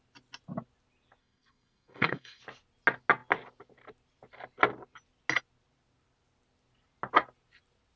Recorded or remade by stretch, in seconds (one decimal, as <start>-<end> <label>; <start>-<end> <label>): 0.0-1.2 recorded; 1.2-2.4 remade; 2.4-8.0 recorded